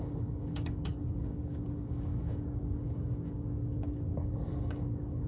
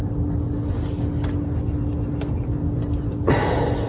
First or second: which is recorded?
second